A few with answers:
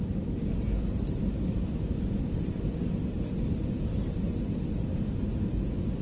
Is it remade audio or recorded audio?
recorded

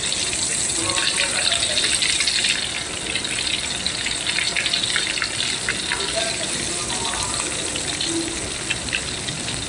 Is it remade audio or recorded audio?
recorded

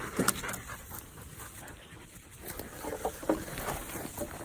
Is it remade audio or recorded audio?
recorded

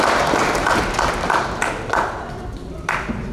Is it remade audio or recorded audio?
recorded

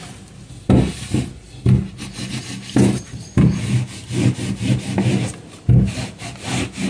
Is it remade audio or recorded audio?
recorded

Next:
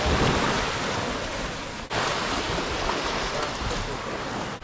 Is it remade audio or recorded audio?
recorded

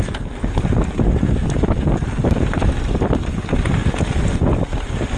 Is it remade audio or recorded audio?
recorded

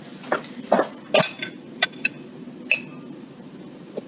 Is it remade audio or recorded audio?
recorded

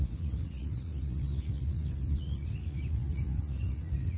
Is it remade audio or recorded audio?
remade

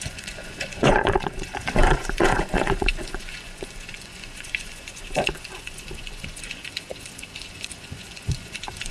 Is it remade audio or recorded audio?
remade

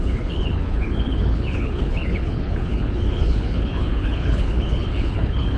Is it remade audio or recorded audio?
remade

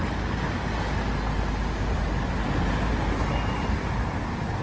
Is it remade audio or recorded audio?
recorded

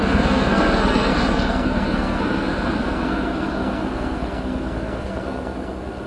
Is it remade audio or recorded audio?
remade